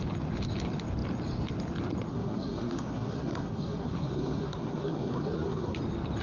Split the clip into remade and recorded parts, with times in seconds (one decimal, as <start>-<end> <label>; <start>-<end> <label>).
0.0-2.1 recorded; 2.1-5.8 remade; 5.8-6.2 recorded